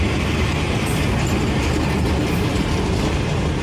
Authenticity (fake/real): real